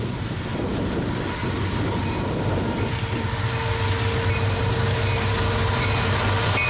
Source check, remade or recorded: recorded